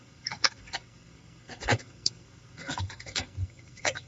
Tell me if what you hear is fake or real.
fake